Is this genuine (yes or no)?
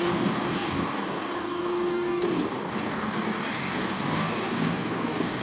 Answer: no